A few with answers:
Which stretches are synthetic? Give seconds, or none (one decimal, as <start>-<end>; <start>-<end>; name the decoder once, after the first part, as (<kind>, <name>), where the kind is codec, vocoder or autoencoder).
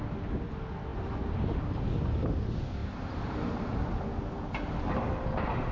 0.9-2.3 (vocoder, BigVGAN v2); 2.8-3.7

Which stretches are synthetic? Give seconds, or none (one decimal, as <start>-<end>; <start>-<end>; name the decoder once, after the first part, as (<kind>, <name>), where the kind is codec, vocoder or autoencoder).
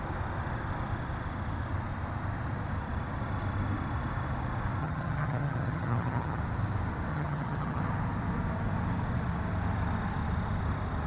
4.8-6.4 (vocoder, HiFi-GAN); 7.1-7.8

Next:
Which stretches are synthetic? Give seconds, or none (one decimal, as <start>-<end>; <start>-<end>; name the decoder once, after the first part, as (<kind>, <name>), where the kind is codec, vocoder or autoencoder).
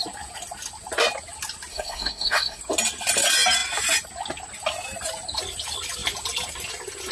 1.7-2.6 (codec, SNAC)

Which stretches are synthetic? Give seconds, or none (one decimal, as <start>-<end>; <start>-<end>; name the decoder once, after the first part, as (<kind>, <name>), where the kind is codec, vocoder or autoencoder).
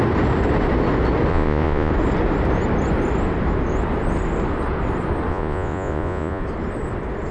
1.3-1.9 (vocoder, Vocos); 5.3-6.4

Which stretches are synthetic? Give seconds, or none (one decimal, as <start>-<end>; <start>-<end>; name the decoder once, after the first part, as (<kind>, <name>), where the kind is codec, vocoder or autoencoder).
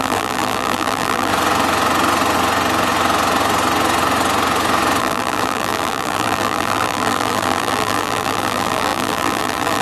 0.0-1.3 (vocoder, BigVGAN v2); 5.0-9.8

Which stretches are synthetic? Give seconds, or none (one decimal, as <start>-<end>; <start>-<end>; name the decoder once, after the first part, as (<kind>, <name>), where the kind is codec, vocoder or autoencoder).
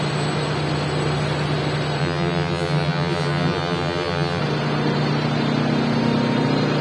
2.0-4.4 (vocoder, BigVGAN v2)